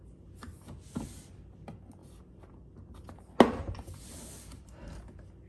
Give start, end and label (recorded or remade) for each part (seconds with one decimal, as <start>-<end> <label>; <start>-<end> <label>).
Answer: 0.0-5.5 recorded